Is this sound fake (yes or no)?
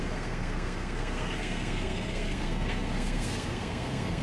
yes